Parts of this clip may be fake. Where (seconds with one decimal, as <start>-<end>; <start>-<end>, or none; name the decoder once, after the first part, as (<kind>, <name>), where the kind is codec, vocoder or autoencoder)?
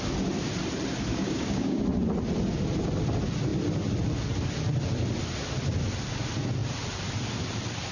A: 1.1-1.8 (codec, DAC)